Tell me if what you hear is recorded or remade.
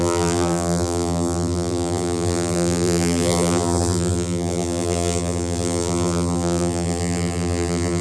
remade